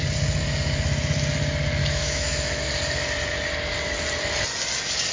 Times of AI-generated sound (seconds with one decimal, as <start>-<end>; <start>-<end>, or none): 1.8-2.7